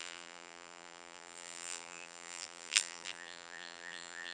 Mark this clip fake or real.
fake